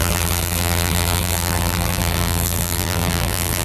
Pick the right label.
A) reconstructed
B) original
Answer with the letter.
A